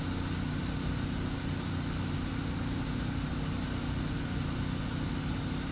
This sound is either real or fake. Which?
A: real